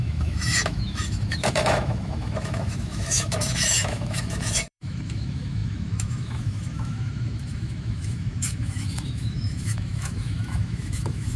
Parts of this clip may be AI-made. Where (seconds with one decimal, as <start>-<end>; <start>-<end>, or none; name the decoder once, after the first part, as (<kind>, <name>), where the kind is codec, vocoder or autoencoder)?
0.0-11.4 (autoencoder, DAC-VAE)